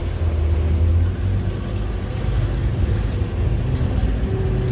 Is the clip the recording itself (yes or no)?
yes